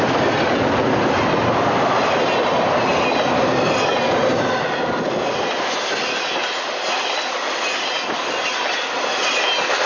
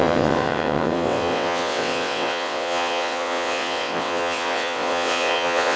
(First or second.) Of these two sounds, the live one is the first